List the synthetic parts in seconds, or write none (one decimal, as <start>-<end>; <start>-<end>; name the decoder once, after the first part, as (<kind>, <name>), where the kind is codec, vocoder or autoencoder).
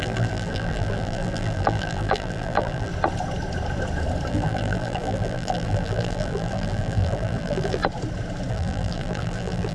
0.0-2.9 (vocoder, BigVGAN v2); 4.3-7.8; 8.5-9.7